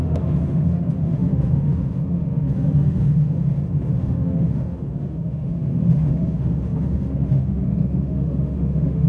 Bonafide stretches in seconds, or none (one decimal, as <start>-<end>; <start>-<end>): none